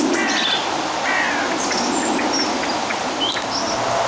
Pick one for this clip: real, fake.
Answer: real